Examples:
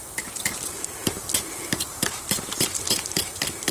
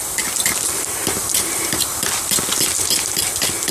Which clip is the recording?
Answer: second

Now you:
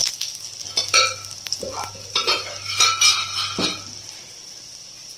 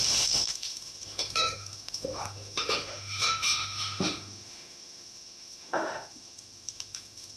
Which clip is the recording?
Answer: first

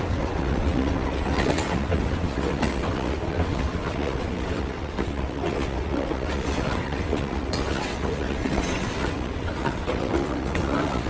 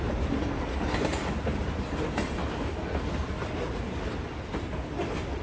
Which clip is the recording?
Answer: second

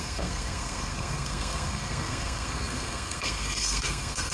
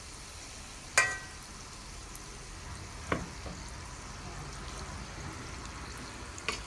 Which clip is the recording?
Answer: second